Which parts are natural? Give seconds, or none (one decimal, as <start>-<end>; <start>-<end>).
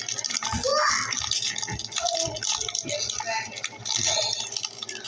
0.0-5.1